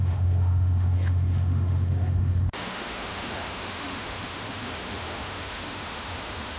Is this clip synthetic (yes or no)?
yes